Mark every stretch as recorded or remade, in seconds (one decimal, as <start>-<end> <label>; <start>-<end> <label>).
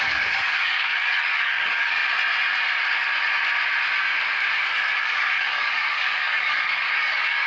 0.0-2.0 remade; 2.0-5.0 recorded; 5.0-7.5 remade